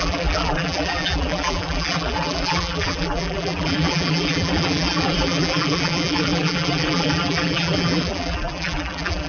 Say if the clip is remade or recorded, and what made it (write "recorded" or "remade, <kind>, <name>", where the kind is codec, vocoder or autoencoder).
remade, vocoder, BigVGAN v2